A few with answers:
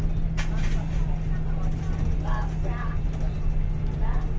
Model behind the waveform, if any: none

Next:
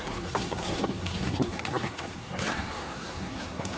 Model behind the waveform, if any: codec, SNAC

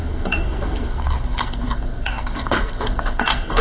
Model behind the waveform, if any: codec, SNAC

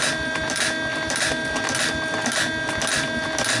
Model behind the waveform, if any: none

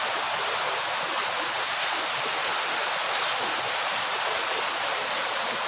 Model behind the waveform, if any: none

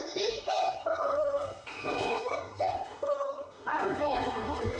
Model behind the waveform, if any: codec, SNAC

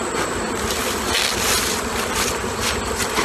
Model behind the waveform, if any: none